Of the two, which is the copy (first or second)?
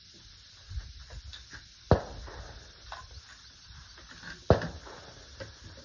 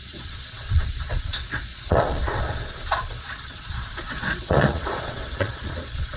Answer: second